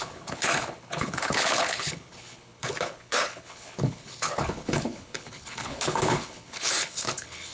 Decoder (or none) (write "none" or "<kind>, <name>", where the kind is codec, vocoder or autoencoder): codec, HILCodec